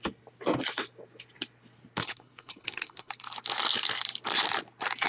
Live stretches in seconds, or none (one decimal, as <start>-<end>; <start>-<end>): 0.0-2.0; 3.1-5.1